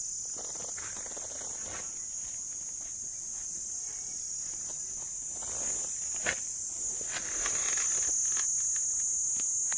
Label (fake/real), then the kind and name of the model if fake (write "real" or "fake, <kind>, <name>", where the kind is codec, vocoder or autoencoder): real